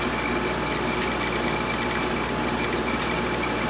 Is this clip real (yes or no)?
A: yes